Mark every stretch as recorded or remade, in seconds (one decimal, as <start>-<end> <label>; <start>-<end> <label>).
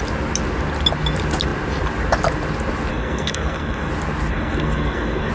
0.0-2.9 recorded; 2.9-3.9 remade; 3.9-4.3 recorded; 4.3-5.3 remade